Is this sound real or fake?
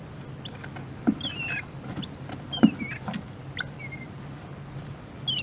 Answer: real